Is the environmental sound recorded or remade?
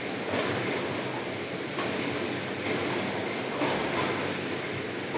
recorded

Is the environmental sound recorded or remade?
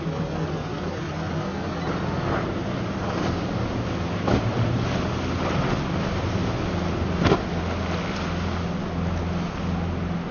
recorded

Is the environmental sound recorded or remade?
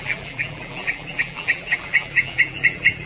remade